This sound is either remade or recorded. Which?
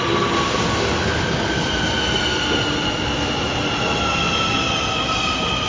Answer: recorded